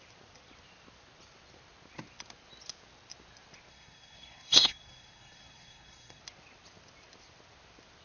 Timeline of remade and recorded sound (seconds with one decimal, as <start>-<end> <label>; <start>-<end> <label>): 0.0-3.7 recorded; 3.7-6.2 remade; 6.2-8.0 recorded